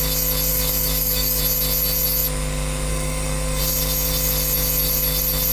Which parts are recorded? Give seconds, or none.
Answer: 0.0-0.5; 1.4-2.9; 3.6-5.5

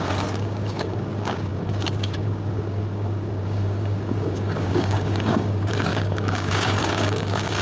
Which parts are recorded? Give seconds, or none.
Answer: none

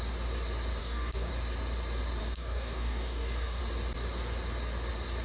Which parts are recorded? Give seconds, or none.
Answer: 0.0-0.8; 1.3-2.2; 3.6-5.2

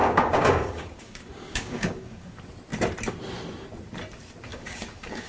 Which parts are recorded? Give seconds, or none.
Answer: 2.3-4.5